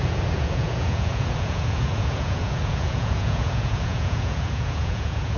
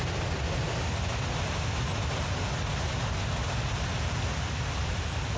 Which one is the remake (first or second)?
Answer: first